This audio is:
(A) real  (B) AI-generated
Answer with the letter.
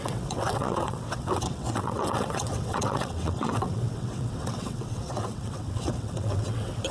B